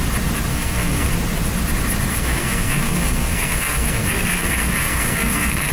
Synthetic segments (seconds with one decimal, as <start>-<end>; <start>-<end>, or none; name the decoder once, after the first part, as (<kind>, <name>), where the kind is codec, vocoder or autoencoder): 0.5-1.1 (codec, SNAC); 2.1-5.7